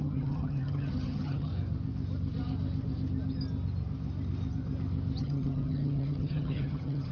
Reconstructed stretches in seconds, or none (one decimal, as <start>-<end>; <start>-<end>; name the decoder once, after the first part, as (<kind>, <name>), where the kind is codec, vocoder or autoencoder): 0.0-1.5 (vocoder, HiFi-GAN); 5.2-7.1